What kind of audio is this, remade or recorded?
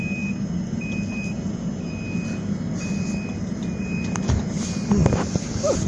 recorded